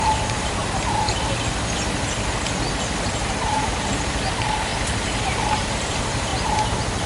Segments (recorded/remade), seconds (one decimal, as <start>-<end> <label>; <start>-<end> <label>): 0.0-0.6 remade; 0.6-3.2 recorded; 3.2-4.7 remade; 4.7-5.5 recorded; 5.5-6.3 remade; 6.3-7.1 recorded